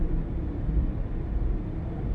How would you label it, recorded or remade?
remade